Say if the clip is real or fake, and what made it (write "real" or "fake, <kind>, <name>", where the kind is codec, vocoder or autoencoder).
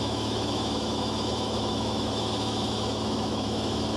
fake, autoencoder, DAC-VAE